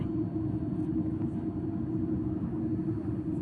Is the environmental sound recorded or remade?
recorded